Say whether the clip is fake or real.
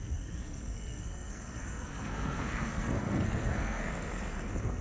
fake